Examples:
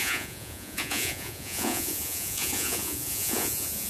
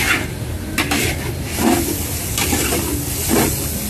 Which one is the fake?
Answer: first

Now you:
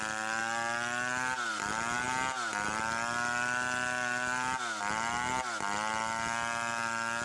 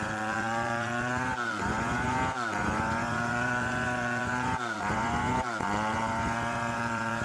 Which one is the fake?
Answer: second